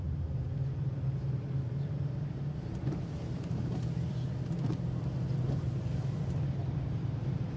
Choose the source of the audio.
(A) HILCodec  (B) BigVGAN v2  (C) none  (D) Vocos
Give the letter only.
B